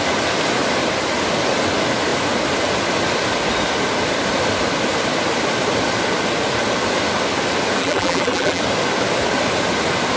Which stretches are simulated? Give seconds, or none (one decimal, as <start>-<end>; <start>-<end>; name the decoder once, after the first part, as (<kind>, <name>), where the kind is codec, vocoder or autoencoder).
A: 7.8-8.6 (vocoder, BigVGAN v2)